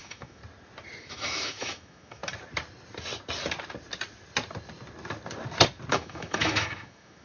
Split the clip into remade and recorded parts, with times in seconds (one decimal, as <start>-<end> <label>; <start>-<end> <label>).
0.0-0.4 remade; 0.4-1.0 recorded; 1.0-2.2 remade; 2.2-5.9 recorded; 5.9-7.2 remade